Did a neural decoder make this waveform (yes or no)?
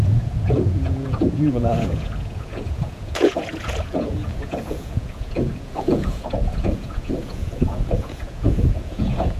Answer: yes